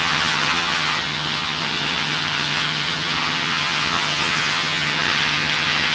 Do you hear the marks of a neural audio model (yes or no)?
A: yes